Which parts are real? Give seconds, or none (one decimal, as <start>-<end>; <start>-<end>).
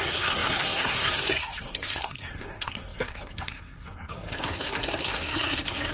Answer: none